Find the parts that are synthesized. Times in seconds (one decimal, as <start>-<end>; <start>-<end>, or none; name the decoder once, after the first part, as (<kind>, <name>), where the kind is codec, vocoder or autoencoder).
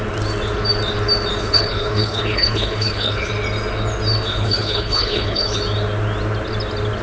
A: 1.4-3.3 (codec, HILCodec); 4.3-5.6